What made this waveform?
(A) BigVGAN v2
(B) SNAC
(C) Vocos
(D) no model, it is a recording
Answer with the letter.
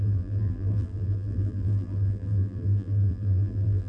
A